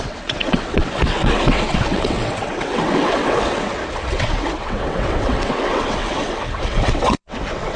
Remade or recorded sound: remade